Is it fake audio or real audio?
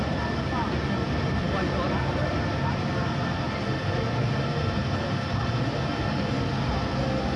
real